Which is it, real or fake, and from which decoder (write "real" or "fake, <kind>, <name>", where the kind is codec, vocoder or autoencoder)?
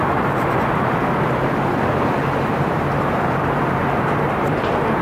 fake, vocoder, BigVGAN v2